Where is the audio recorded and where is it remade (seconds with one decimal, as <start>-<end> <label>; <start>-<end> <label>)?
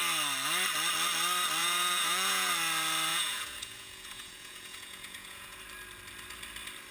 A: 0.0-1.6 recorded; 1.6-2.5 remade; 2.5-3.1 recorded; 3.1-5.6 remade; 5.6-6.9 recorded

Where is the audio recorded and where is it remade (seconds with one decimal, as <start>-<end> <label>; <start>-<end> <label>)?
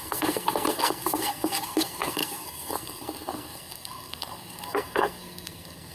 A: 0.0-5.9 remade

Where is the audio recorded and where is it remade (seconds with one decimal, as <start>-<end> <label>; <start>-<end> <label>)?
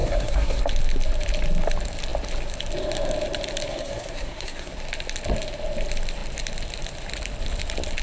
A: 0.0-0.6 remade; 0.6-3.7 recorded; 3.7-4.7 remade; 4.7-8.0 recorded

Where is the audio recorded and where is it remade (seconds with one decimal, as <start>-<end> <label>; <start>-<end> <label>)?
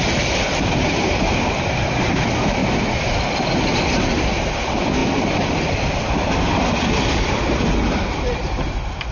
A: 0.0-2.6 remade; 2.6-3.8 recorded; 3.8-9.1 remade